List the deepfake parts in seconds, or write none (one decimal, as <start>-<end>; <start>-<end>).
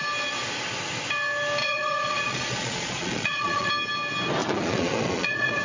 1.6-3.7; 4.4-5.6